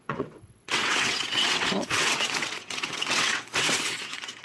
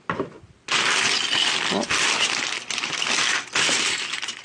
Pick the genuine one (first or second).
second